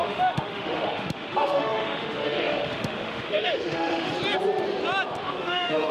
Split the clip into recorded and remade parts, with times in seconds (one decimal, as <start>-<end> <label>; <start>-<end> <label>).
0.0-4.1 remade; 4.1-5.2 recorded; 5.2-5.9 remade